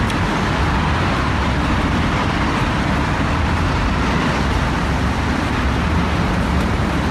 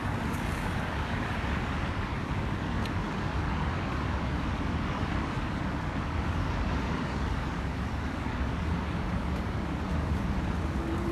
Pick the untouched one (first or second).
first